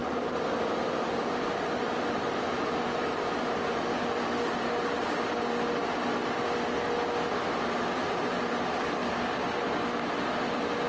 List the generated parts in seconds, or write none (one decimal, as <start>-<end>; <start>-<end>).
none